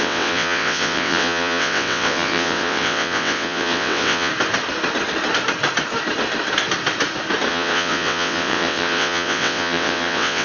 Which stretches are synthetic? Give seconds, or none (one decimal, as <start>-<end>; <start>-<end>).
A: 0.0-4.3; 7.5-10.4

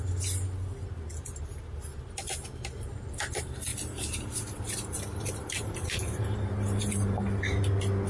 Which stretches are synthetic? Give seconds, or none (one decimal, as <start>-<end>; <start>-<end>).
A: 1.1-2.4; 3.7-7.2

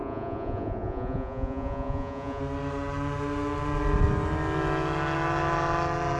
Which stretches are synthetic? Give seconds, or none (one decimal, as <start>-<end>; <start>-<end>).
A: 0.0-2.4

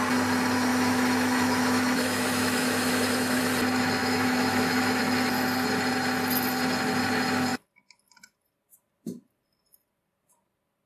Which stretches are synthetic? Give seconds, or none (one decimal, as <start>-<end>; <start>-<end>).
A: 0.7-3.4; 4.0-5.0

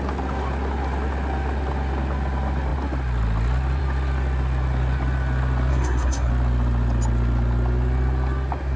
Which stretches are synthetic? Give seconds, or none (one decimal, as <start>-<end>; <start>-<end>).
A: 5.7-6.3

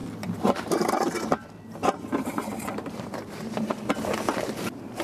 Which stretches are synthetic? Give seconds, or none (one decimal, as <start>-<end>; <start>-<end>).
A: 0.0-1.0; 1.8-5.0